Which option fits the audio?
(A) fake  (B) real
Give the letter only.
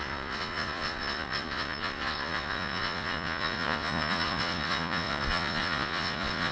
A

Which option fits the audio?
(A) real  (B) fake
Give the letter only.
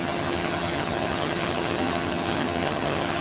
B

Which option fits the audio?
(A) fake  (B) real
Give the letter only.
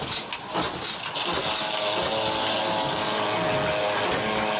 B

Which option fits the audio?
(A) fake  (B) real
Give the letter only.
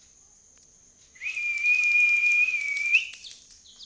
B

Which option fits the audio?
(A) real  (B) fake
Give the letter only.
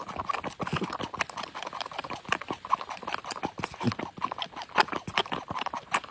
A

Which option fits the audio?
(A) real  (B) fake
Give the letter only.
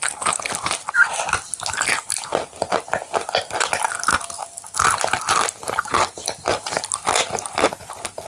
A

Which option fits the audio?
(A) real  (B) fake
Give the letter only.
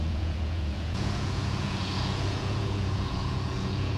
B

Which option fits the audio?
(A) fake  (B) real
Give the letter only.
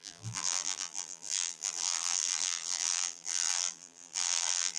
A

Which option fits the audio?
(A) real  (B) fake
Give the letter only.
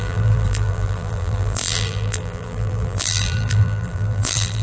B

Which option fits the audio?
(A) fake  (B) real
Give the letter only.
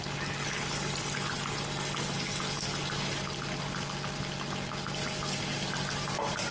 B